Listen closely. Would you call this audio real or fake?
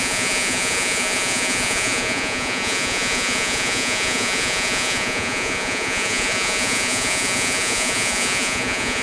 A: fake